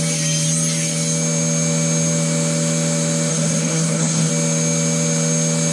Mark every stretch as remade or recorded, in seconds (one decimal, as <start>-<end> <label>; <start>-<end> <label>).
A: 0.0-3.3 recorded; 3.3-4.3 remade; 4.3-5.7 recorded